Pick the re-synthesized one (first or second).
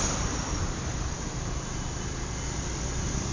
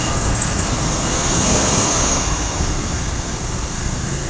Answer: second